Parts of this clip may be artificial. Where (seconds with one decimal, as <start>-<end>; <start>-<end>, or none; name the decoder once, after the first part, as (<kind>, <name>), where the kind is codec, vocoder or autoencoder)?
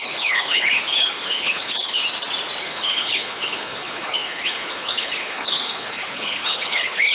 0.0-2.0 (codec, HILCodec); 2.6-7.1